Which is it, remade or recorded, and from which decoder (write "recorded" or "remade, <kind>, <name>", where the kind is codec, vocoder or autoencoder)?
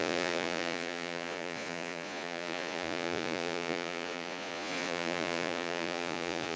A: remade, vocoder, Vocos